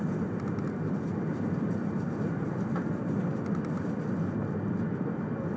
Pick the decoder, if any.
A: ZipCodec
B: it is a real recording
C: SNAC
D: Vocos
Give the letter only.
B